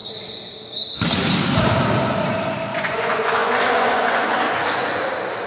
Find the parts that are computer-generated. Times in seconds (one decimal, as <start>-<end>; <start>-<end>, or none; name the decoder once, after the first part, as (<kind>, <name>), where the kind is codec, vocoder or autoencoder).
2.7-5.1 (vocoder, Vocos)